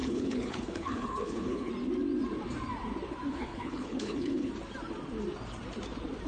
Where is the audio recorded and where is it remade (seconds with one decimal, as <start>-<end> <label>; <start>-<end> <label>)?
0.0-1.7 remade; 1.7-3.3 recorded; 3.3-4.5 remade; 4.5-6.3 recorded